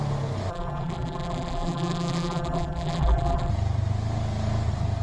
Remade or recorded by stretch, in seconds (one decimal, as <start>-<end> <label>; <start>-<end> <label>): 0.0-0.5 recorded; 0.5-3.5 remade; 3.5-5.0 recorded